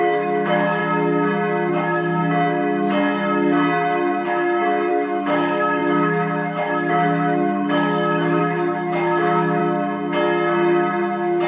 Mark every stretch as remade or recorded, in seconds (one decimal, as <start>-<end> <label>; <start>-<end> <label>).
0.0-0.8 remade; 0.8-1.7 recorded; 1.7-2.2 remade; 2.2-4.9 recorded; 4.9-9.6 remade; 9.6-11.5 recorded